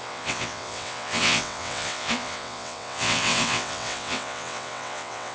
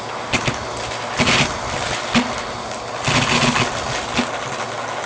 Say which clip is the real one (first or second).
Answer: second